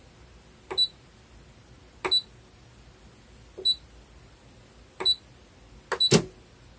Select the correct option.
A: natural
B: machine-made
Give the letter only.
A